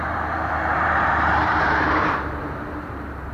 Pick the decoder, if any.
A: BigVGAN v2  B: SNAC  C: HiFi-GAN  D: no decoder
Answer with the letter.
A